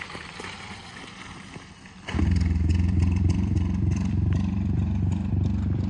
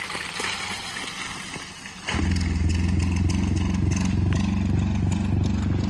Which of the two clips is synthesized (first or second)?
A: first